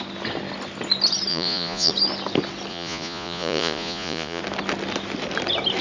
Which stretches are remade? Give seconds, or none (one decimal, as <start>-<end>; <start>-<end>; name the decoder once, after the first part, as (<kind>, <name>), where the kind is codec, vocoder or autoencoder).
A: 1.3-1.9 (vocoder, Vocos); 2.7-4.4